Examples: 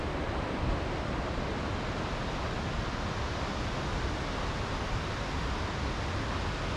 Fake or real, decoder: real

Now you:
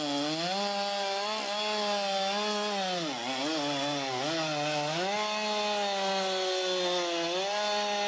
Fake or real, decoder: real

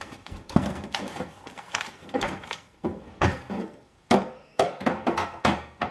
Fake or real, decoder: fake, codec, SNAC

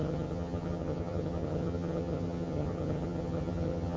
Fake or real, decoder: fake, vocoder, HiFi-GAN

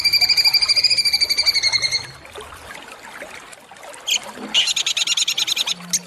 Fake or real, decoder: real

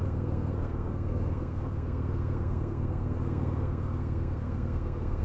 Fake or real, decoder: fake, codec, SNAC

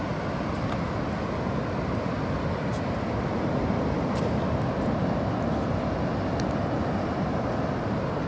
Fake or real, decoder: real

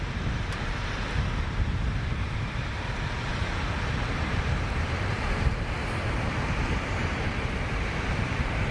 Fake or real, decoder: fake, vocoder, BigVGAN v2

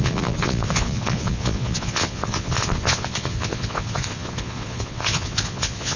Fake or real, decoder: fake, vocoder, Vocos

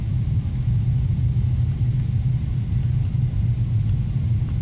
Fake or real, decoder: real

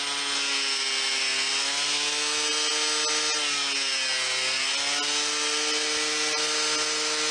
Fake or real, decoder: real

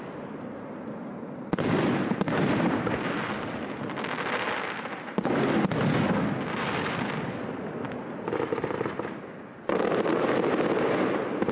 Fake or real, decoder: real